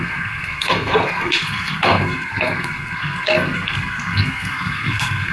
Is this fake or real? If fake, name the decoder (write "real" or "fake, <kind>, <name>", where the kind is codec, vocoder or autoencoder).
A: fake, codec, SNAC